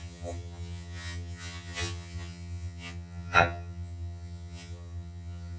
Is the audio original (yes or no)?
no